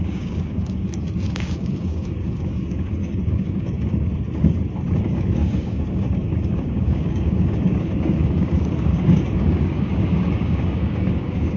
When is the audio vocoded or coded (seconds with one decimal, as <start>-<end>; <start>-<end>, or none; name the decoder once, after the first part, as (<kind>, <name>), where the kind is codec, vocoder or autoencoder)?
0.0-4.1 (codec, DAC); 5.0-11.6